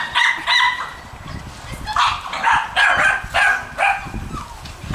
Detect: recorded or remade recorded